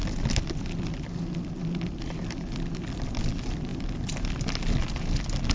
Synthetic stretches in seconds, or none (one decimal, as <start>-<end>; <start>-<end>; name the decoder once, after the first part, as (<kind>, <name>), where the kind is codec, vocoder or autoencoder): none